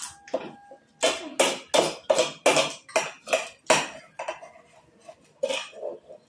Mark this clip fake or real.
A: real